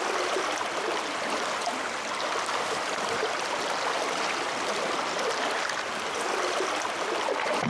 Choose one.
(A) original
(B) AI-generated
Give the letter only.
A